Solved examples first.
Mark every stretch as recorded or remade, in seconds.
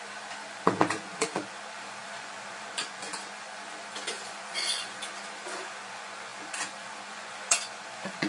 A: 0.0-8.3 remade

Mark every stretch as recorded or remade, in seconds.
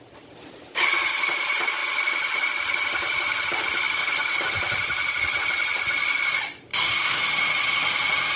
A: 0.0-6.7 recorded; 6.7-7.2 remade; 7.2-8.4 recorded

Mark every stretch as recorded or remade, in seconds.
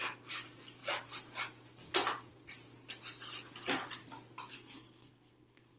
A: 0.0-4.5 recorded; 4.5-5.8 remade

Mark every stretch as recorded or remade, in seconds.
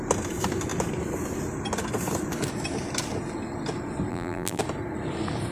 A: 0.0-4.1 recorded; 4.1-4.6 remade; 4.6-5.5 recorded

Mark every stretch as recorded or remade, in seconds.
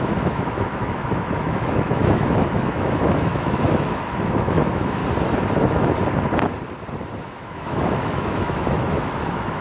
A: 0.0-5.0 remade; 5.0-7.2 recorded; 7.2-9.6 remade